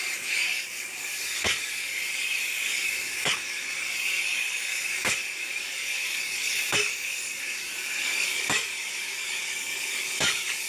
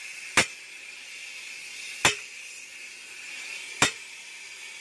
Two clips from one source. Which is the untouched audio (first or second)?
second